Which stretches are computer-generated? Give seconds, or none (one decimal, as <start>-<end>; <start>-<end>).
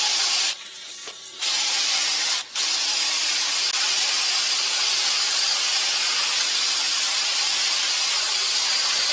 none